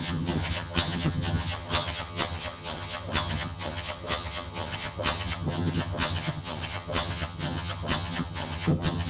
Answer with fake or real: fake